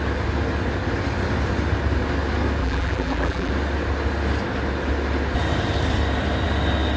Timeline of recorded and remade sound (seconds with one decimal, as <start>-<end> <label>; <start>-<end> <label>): 0.0-2.6 recorded; 2.6-3.5 remade; 3.5-7.0 recorded